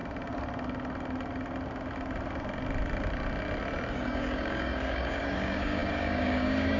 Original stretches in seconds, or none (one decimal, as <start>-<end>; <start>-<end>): 0.0-3.9